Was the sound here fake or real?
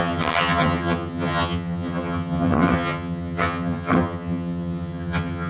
fake